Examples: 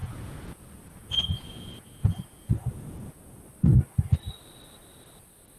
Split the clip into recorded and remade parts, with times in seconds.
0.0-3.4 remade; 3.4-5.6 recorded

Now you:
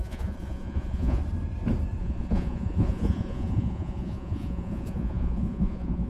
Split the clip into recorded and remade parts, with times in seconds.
0.0-1.2 remade; 1.2-2.0 recorded; 2.0-6.1 remade

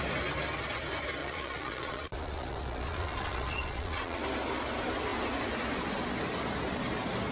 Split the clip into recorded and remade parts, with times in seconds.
0.0-1.2 recorded; 1.2-4.2 remade; 4.2-7.3 recorded

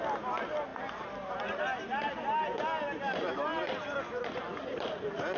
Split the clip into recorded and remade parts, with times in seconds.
0.0-5.4 recorded

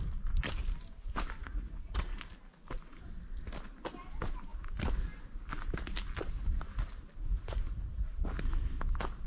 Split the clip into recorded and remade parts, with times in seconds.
0.0-1.4 recorded; 1.4-2.2 remade; 2.2-7.3 recorded; 7.3-8.3 remade; 8.3-9.3 recorded

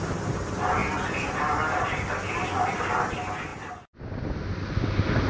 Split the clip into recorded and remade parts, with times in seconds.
0.0-5.3 recorded

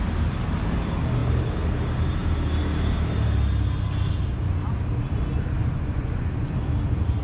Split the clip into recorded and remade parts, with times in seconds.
0.0-5.6 recorded; 5.6-6.5 remade; 6.5-7.2 recorded